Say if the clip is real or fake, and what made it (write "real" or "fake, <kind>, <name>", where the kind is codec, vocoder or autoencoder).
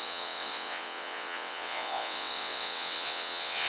fake, vocoder, WaveNeXt